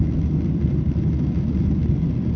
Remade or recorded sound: recorded